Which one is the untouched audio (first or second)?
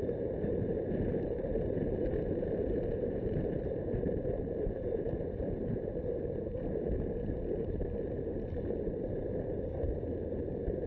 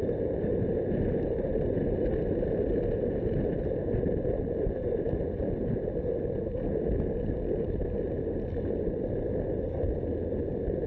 second